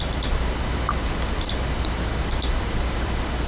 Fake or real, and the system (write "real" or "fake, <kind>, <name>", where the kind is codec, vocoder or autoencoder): real